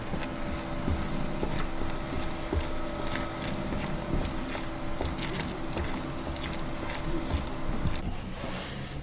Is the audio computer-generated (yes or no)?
no